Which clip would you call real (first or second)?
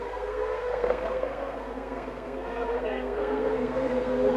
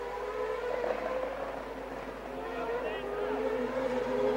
second